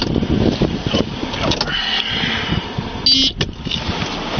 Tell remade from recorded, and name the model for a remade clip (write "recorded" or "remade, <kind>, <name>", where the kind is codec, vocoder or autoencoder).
recorded